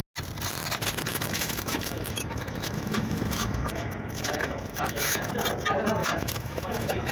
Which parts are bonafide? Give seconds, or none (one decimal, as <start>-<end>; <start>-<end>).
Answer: 0.0-1.1; 5.3-6.0